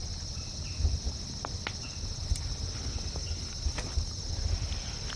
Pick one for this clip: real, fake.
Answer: real